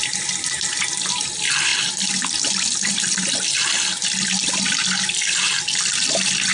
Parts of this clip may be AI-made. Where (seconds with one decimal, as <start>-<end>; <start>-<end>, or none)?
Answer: none